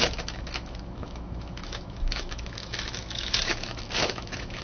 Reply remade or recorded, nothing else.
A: remade